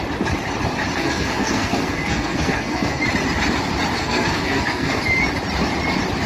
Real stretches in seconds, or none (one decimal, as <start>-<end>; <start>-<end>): 0.0-0.9; 3.0-4.0; 5.0-6.3